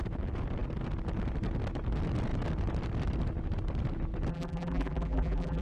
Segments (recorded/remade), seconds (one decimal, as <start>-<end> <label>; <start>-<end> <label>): 0.0-4.3 recorded; 4.3-5.6 remade